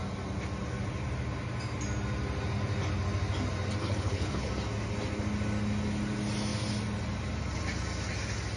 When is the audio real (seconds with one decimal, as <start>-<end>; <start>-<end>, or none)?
0.0-3.8; 4.5-8.6